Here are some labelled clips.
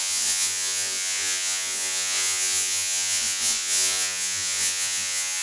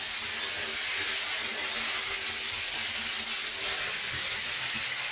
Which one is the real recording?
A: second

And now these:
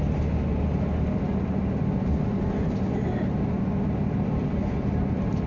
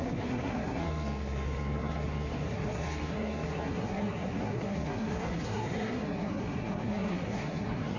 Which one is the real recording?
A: first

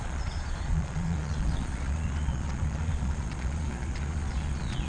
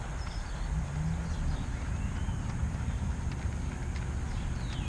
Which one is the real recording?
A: second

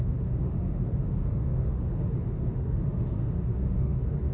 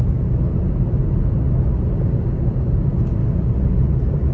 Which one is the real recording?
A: second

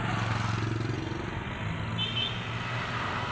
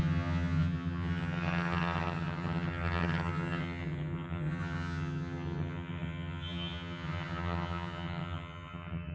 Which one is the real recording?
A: first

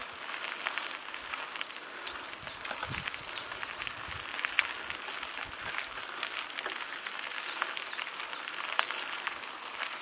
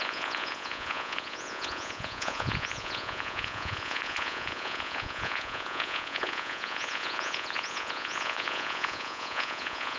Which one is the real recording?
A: first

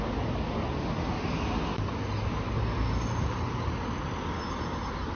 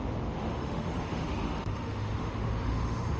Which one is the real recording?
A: first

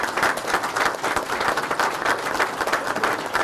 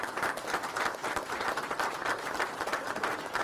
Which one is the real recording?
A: first